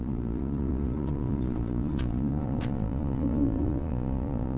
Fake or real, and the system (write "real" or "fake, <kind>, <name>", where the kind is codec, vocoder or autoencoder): fake, vocoder, Vocos